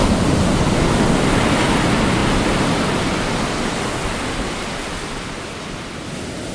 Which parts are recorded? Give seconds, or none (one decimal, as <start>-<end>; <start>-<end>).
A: 0.0-6.5